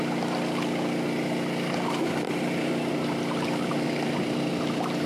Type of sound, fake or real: real